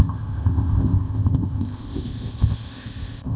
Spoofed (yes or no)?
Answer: yes